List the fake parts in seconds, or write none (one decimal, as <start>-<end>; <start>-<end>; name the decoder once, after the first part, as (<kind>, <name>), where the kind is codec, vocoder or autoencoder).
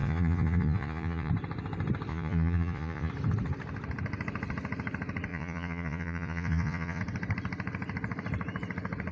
0.0-1.3 (vocoder, Vocos); 2.1-3.1; 5.3-7.0